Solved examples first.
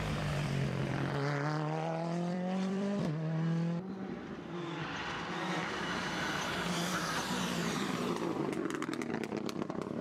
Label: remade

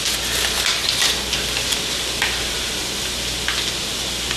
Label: recorded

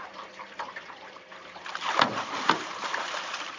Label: remade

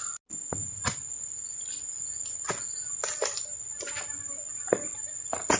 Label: recorded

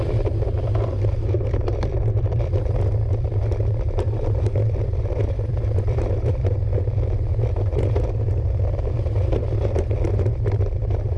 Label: remade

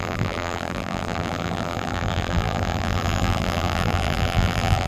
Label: remade